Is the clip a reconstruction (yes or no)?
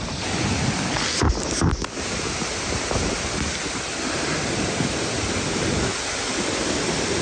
no